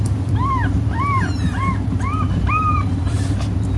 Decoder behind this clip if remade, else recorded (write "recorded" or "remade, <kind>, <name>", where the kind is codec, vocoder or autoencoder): remade, vocoder, BigVGAN v2